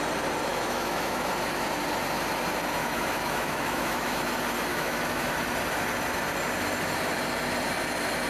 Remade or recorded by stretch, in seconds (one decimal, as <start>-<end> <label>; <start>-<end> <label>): 0.0-0.5 recorded; 0.5-1.3 remade; 1.3-2.8 recorded; 2.8-4.3 remade; 4.3-4.7 recorded; 4.7-5.3 remade; 5.3-8.3 recorded